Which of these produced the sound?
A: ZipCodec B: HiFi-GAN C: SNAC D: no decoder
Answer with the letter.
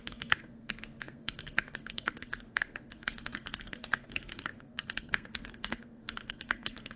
C